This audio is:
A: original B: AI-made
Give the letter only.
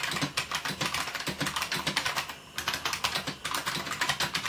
A